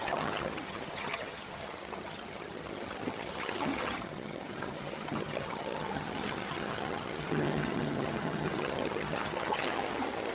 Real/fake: fake